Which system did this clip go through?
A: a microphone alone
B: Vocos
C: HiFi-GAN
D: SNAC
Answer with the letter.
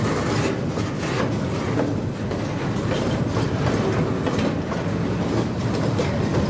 A